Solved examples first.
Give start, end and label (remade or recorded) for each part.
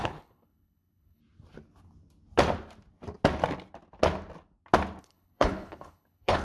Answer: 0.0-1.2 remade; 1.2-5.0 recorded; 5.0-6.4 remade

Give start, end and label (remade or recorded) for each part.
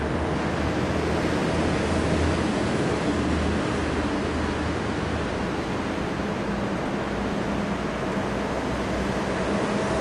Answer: 0.0-10.0 recorded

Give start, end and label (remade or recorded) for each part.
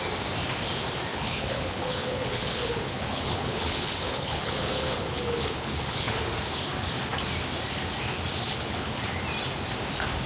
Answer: 0.0-1.1 recorded; 1.1-6.2 remade; 6.2-8.5 recorded; 8.5-9.1 remade; 9.1-10.3 recorded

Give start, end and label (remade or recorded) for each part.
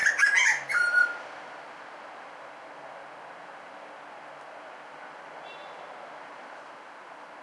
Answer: 0.0-7.4 recorded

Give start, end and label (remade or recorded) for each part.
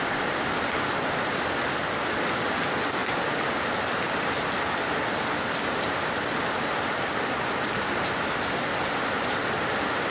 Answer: 0.0-10.1 recorded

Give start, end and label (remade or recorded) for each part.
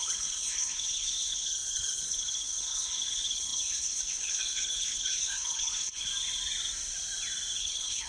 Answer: 0.0-6.1 remade; 6.1-7.6 recorded; 7.6-8.1 remade